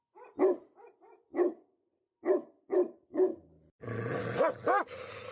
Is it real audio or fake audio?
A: fake